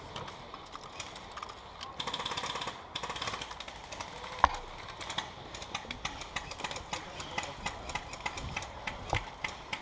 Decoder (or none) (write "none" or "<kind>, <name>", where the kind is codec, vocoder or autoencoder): none